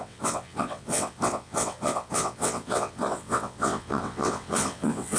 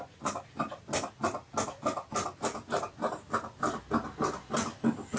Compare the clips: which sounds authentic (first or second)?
second